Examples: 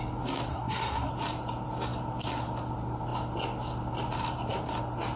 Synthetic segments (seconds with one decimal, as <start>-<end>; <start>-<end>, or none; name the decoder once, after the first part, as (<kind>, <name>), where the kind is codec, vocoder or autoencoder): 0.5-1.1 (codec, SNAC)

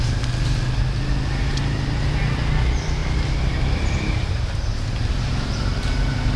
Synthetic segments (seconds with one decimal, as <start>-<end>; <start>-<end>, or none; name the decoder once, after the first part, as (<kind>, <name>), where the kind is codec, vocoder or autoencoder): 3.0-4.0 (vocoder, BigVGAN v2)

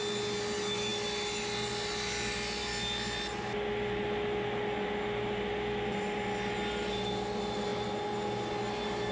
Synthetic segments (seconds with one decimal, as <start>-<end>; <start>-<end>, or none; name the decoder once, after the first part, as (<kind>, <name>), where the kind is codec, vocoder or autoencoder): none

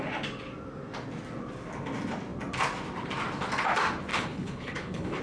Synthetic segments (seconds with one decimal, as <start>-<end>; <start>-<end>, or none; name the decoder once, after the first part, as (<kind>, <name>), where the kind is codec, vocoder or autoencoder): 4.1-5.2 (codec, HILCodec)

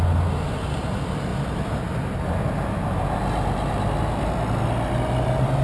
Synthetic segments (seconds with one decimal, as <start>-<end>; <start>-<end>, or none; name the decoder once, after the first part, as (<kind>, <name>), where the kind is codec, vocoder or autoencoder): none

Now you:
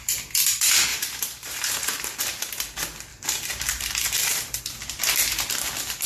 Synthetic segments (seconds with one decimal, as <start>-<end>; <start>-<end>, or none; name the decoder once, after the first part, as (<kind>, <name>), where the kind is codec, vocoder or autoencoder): 0.9-2.2 (vocoder, BigVGAN v2); 3.1-4.6

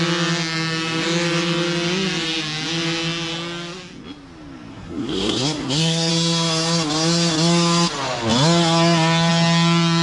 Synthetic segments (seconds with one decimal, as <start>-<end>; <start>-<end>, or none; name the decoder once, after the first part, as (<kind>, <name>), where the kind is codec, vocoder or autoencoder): 4.7-6.1 (codec, SNAC)